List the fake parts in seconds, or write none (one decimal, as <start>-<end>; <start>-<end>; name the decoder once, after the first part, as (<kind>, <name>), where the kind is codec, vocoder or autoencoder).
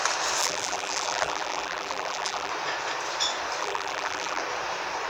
0.4-2.5 (vocoder, BigVGAN v2); 3.6-4.4